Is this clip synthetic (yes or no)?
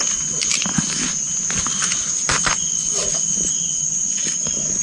no